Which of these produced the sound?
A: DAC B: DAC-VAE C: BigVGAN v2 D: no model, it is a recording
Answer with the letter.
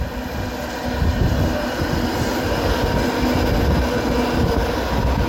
D